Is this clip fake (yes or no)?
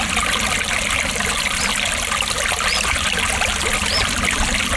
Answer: no